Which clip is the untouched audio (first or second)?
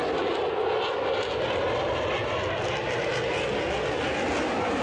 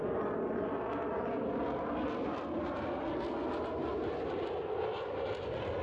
first